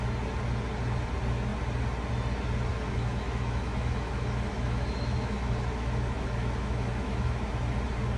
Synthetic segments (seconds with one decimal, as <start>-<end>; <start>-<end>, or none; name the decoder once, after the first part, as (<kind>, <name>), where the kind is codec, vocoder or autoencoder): 2.7-7.5 (autoencoder, DAC-VAE)